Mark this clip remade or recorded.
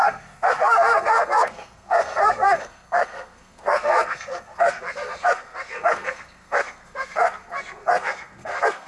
remade